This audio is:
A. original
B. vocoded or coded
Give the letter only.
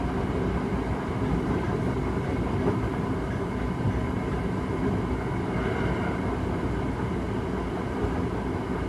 A